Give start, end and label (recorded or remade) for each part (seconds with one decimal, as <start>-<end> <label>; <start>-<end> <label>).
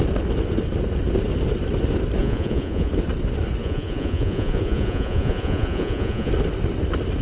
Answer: 0.0-2.2 recorded; 2.2-2.9 remade; 2.9-3.6 recorded; 3.6-6.3 remade; 6.3-7.2 recorded